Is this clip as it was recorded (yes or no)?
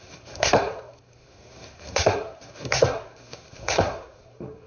no